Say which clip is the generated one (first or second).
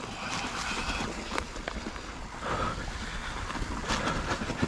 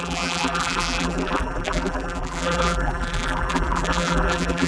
second